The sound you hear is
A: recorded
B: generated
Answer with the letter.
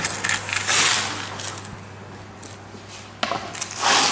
A